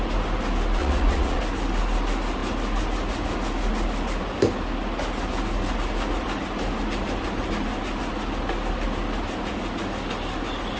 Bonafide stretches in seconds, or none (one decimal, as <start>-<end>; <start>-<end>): 0.0-0.8; 1.4-10.8